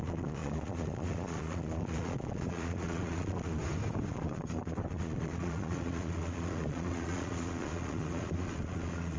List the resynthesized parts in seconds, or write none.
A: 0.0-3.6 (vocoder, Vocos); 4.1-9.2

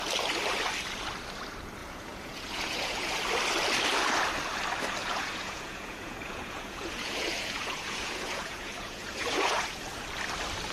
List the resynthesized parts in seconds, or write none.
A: 1.8-3.2 (vocoder, Vocos); 5.0-9.8

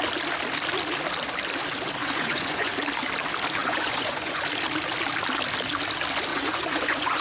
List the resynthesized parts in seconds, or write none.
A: 2.0-2.7 (vocoder, Vocos); 3.6-4.4; 6.3-7.2

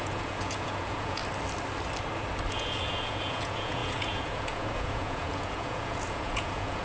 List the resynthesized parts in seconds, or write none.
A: 0.0-1.2 (vocoder, Vocos); 2.5-6.8

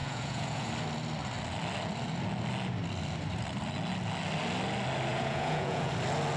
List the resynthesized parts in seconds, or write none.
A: 0.0-0.7 (vocoder, Vocos); 5.1-5.9

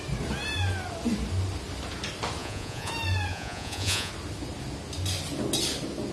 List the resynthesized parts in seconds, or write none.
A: 2.4-2.9 (vocoder, Vocos); 3.3-4.1

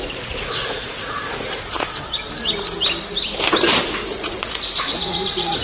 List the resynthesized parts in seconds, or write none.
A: 0.0-1.2 (vocoder, Vocos); 4.2-5.6